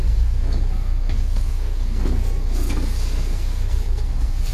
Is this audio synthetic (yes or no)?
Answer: yes